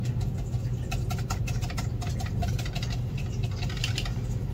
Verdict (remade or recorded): recorded